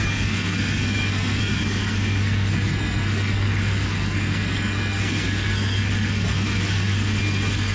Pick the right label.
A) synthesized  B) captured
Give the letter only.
A